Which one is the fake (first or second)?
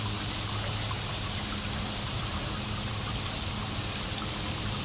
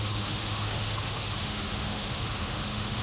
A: second